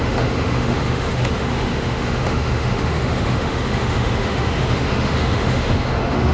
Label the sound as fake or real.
fake